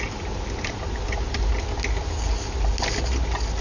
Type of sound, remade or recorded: recorded